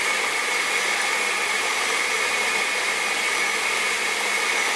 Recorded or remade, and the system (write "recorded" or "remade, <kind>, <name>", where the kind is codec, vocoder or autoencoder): recorded